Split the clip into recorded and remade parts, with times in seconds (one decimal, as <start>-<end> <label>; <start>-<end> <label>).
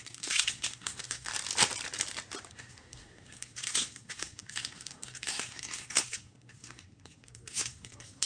0.0-1.3 remade; 1.3-2.5 recorded; 2.5-8.3 remade